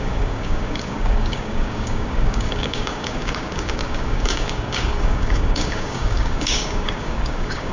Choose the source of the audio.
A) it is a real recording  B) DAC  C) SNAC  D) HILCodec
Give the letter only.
B